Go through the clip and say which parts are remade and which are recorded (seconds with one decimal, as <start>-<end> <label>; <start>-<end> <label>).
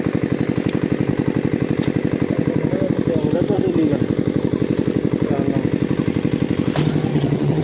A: 0.0-7.1 recorded; 7.1-7.6 remade